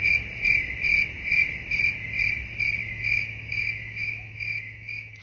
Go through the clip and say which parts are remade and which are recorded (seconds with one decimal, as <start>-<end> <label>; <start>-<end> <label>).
0.0-2.8 recorded; 2.8-5.2 remade